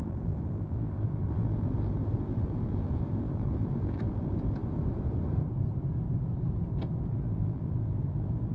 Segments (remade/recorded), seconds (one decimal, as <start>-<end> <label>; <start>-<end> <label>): 0.0-4.6 remade; 4.6-7.1 recorded; 7.1-8.5 remade